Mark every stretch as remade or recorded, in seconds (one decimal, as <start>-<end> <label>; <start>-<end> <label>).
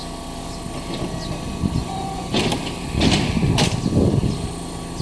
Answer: 0.0-1.8 recorded; 1.8-2.4 remade; 2.4-5.0 recorded